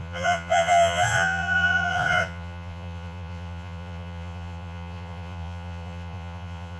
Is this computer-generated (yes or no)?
yes